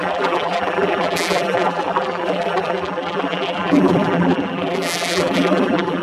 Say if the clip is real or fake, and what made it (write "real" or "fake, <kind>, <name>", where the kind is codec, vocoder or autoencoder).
fake, vocoder, BigVGAN v2